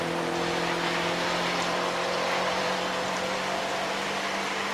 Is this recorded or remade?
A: remade